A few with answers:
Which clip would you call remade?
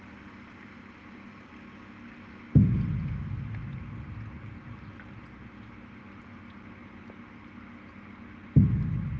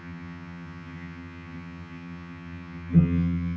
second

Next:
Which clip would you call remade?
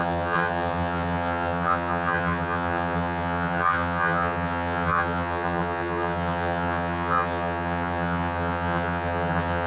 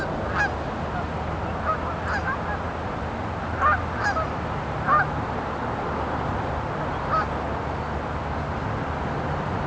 first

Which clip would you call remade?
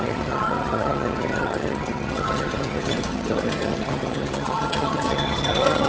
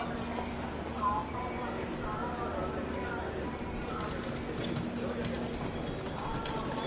first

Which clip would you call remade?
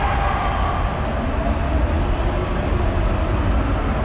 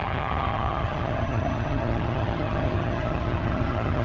second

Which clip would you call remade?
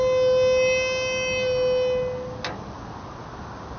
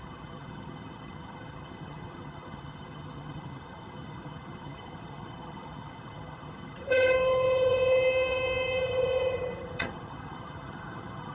second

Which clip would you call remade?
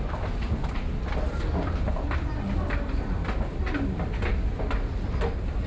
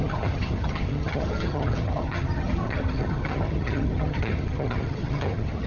second